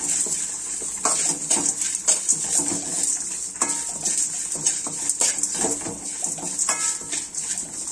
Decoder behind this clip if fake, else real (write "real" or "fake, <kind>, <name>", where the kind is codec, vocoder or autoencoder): real